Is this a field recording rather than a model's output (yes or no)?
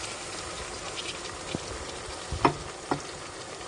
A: yes